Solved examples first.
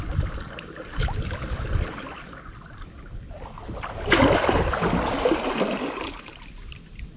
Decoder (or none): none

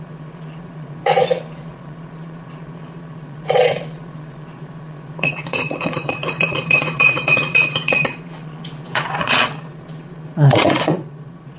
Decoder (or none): vocoder, Vocos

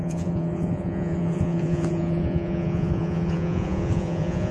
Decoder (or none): vocoder, Vocos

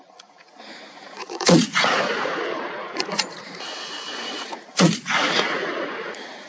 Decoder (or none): vocoder, Vocos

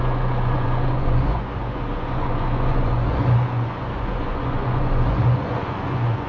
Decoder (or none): vocoder, Vocos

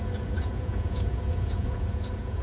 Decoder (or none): vocoder, Vocos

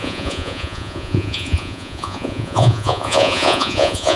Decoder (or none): vocoder, Vocos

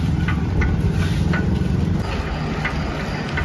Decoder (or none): none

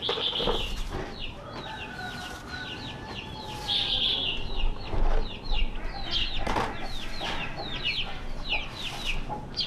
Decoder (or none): none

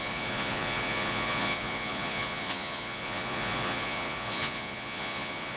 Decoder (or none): vocoder, Vocos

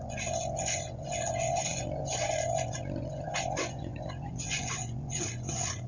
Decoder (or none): vocoder, Vocos